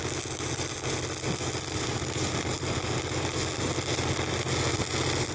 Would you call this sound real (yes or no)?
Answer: yes